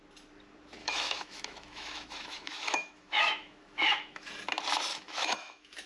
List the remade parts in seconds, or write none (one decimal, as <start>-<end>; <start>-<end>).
0.8-4.3; 4.9-5.9